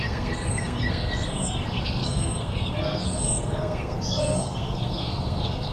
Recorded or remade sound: remade